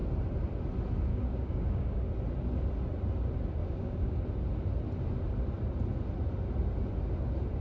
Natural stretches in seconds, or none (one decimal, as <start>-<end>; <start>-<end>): 0.0-1.1; 2.1-3.6; 4.2-7.6